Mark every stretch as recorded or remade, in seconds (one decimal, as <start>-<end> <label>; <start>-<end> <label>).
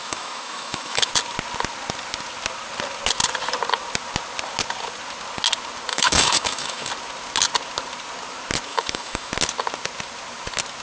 0.0-1.1 remade; 1.1-5.9 recorded; 5.9-6.9 remade; 6.9-8.7 recorded; 8.7-9.3 remade; 9.3-10.8 recorded